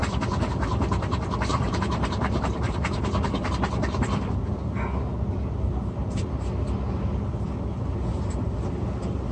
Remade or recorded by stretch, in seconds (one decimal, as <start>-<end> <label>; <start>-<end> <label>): 0.0-1.5 recorded; 1.5-3.0 remade; 3.0-9.3 recorded